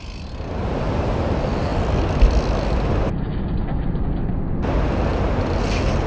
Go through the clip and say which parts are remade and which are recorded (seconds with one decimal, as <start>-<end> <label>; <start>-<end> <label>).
0.0-0.6 recorded; 0.6-1.2 remade; 1.2-5.1 recorded; 5.1-5.6 remade; 5.6-6.1 recorded